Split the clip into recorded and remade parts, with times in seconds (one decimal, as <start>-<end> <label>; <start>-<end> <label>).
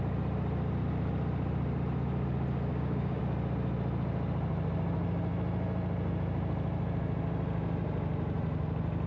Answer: 0.0-2.7 recorded; 2.7-3.2 remade; 3.2-9.1 recorded